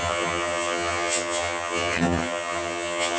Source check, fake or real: fake